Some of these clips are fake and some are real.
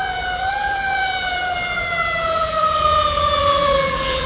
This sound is fake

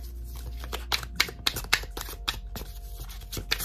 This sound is real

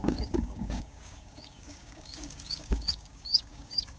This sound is fake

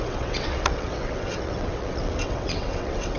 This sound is fake